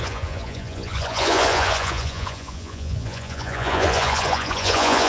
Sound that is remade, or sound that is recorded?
remade